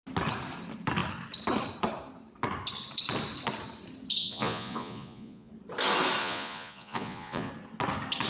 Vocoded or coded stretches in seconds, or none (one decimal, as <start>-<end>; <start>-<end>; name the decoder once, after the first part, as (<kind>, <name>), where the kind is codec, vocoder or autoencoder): 4.2-5.5 (vocoder, Vocos); 6.2-7.5